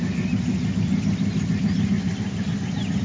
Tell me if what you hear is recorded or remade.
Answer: recorded